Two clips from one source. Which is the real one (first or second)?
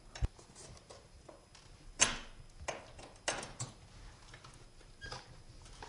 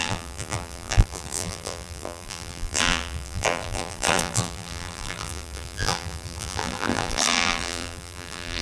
first